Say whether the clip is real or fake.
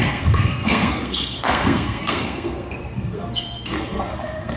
fake